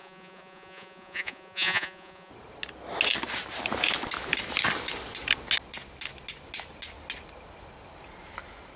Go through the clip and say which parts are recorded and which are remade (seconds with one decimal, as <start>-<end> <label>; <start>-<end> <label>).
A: 0.0-2.3 remade; 2.3-8.8 recorded